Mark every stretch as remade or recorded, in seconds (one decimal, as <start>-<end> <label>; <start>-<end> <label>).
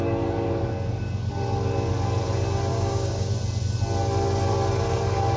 0.0-2.7 recorded; 2.7-3.3 remade; 3.3-5.4 recorded